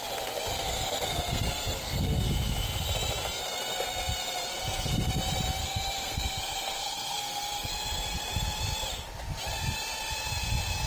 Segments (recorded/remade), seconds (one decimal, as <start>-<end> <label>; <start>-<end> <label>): 0.0-0.5 recorded; 0.5-2.3 remade; 2.3-4.5 recorded; 4.5-5.1 remade; 5.1-5.6 recorded; 5.6-7.7 remade; 7.7-10.9 recorded